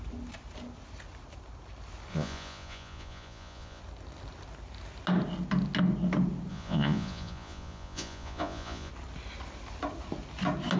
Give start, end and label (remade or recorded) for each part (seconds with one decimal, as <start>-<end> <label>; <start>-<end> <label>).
0.0-2.1 recorded; 2.1-3.8 remade; 3.8-6.5 recorded; 6.5-8.9 remade; 8.9-10.8 recorded